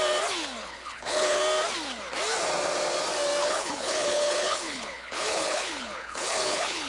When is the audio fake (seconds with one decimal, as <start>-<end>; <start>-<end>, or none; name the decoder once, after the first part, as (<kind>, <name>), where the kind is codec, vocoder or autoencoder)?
0.6-1.4 (codec, HILCodec); 3.4-6.9